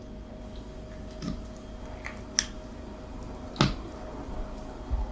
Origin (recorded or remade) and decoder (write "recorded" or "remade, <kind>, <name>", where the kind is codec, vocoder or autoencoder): recorded